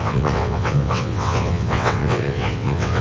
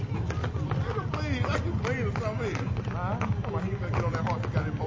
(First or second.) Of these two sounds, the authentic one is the second